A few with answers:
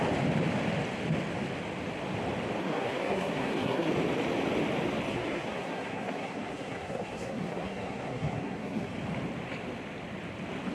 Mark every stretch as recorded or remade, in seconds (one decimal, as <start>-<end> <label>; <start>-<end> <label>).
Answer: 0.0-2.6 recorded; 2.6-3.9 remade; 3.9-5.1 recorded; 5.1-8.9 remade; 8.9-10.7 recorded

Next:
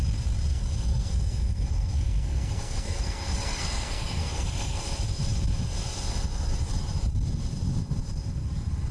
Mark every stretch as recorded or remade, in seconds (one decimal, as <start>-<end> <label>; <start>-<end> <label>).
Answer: 0.0-0.5 recorded; 0.5-4.8 remade; 4.8-8.9 recorded

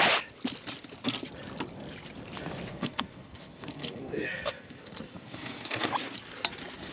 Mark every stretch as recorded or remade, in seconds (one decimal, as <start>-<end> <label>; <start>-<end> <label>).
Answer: 0.0-2.7 recorded; 2.7-5.9 remade; 5.9-6.9 recorded

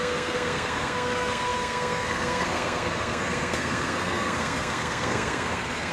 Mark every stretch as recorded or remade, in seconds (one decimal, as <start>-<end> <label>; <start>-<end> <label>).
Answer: 0.0-5.9 remade